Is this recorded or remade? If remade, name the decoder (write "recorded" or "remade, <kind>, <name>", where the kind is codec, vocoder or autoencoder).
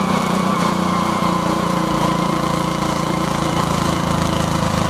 remade, vocoder, BigVGAN v2